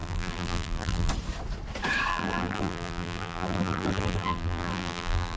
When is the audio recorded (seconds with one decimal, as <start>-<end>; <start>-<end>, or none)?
1.1-2.1